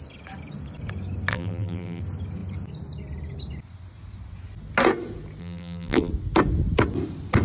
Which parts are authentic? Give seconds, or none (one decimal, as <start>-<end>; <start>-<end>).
0.0-1.3; 2.0-5.4; 6.1-7.4